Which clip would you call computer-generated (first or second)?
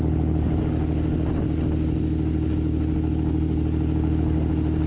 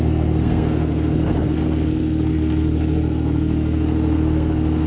second